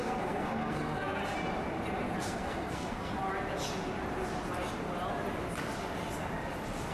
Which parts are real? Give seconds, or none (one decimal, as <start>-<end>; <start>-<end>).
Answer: 1.2-2.2; 3.1-6.9